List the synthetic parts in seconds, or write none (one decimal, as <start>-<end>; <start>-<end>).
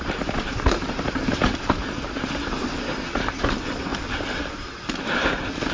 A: 0.0-3.9; 4.4-5.7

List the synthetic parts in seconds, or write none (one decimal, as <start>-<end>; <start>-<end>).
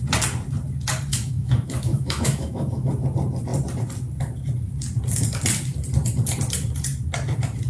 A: 1.1-2.9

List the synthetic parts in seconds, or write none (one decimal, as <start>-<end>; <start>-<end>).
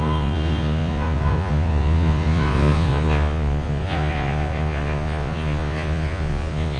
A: 0.0-6.8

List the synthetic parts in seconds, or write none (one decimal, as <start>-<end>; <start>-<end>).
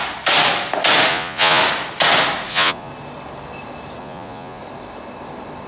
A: 1.1-1.6; 2.5-2.9; 4.0-4.6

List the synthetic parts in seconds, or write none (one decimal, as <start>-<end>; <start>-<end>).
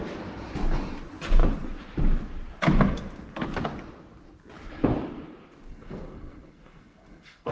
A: 5.7-7.5